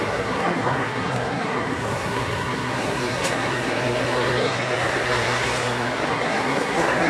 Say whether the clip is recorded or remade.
remade